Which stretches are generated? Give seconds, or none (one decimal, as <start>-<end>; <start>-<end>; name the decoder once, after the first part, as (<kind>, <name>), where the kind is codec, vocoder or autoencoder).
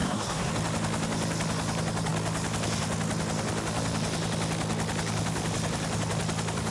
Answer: 0.0-0.5 (codec, SNAC)